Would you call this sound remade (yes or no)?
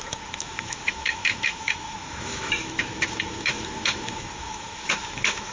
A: yes